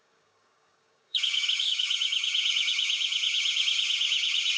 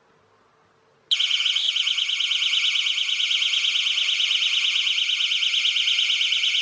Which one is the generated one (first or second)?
first